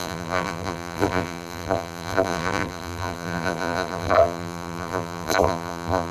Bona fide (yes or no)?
no